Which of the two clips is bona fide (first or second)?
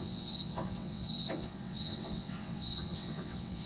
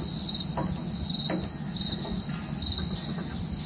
second